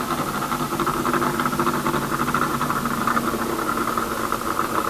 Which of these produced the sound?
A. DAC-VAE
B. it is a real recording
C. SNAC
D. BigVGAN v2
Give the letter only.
B